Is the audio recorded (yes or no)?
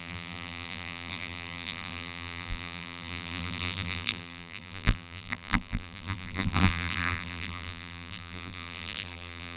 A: no